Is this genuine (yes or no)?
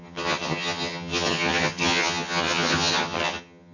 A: no